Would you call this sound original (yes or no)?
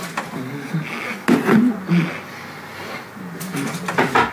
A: yes